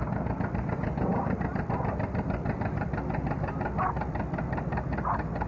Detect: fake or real real